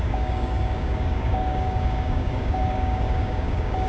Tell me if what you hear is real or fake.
fake